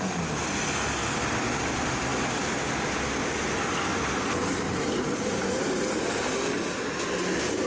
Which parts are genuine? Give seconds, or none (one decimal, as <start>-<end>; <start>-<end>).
0.0-7.7

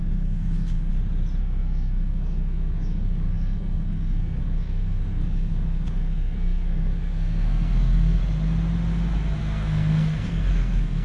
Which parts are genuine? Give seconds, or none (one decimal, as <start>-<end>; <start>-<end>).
0.9-1.4; 8.2-9.4

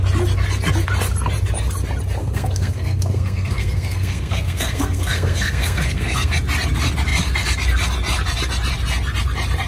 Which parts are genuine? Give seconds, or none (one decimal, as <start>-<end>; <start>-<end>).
0.0-2.2; 6.3-9.7

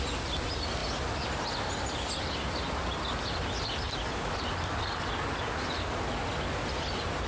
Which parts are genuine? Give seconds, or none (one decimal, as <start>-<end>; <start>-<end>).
0.0-7.3

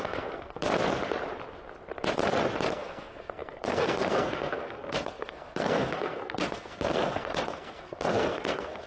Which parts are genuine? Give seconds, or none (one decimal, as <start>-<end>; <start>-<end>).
0.7-2.7

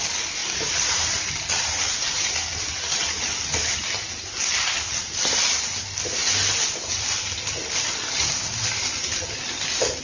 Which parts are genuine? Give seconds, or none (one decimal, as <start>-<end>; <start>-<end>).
0.0-10.0